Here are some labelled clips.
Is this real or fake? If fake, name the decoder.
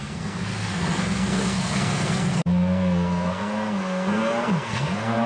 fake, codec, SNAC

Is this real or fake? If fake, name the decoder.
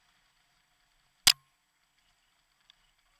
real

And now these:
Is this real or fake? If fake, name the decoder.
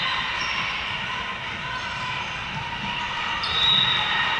real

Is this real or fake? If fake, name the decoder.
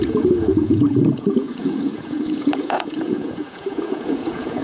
fake, vocoder, Vocos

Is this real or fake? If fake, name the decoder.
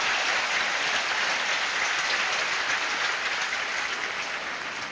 real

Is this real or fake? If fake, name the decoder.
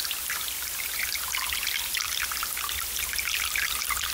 real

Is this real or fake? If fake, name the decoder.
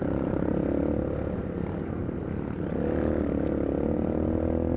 real